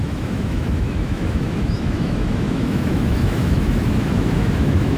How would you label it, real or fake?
fake